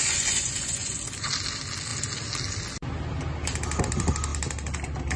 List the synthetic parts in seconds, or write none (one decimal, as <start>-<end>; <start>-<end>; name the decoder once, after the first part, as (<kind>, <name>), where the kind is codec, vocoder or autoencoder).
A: 0.0-1.0 (vocoder, Vocos)